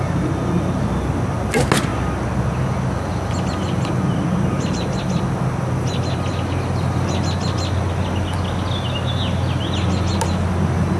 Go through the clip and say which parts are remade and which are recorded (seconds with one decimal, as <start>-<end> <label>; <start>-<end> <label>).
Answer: 0.0-11.0 recorded